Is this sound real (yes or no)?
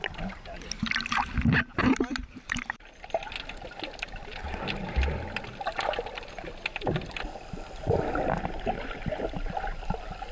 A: yes